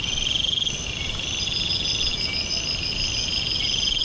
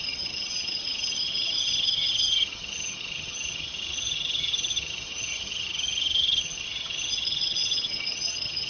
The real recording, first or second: first